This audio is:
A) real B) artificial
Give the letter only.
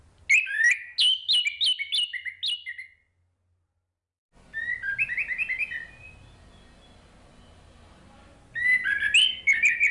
A